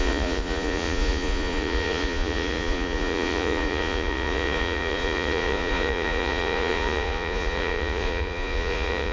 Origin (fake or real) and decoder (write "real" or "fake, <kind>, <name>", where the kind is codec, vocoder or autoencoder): fake, vocoder, Vocos